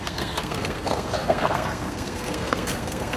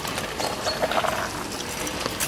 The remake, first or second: first